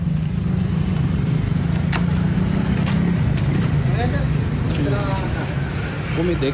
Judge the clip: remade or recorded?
recorded